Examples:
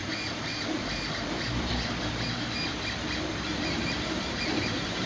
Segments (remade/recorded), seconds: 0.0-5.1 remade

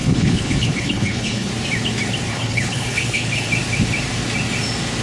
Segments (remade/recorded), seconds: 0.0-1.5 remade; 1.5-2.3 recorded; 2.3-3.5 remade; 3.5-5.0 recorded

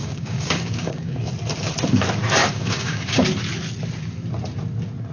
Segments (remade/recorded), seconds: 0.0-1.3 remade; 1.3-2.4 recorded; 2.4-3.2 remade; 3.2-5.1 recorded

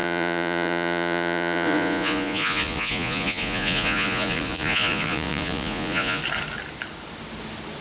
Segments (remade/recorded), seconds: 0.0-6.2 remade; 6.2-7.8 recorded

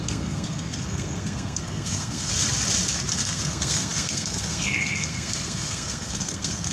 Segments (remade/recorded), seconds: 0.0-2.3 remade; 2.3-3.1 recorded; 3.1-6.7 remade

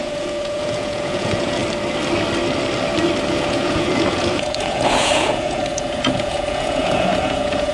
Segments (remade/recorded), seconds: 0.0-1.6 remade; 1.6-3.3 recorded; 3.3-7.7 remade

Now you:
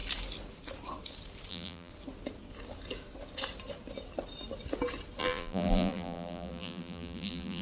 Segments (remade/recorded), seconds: 0.0-1.5 recorded; 1.5-1.9 remade; 1.9-5.2 recorded; 5.2-7.6 remade